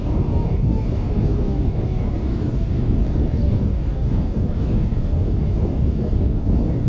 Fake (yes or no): yes